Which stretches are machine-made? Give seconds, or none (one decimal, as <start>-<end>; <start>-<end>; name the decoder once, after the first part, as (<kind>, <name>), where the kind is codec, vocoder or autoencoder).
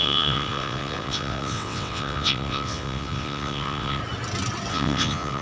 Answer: 0.0-4.0 (vocoder, WaveNeXt); 4.7-5.4